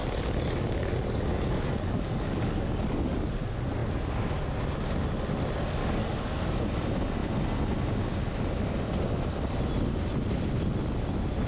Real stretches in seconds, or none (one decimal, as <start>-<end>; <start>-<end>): 3.3-5.8; 6.6-11.5